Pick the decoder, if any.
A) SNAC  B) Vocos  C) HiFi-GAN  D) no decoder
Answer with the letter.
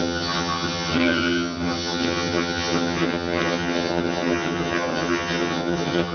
C